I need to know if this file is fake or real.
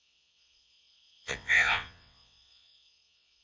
fake